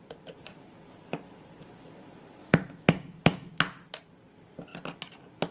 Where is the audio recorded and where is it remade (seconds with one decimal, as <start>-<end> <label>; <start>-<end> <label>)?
0.0-2.4 recorded; 2.4-3.6 remade; 3.6-5.5 recorded